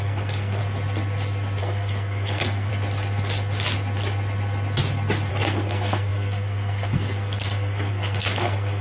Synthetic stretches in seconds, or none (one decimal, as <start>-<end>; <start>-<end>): 0.0-0.6; 1.6-2.7; 5.3-8.8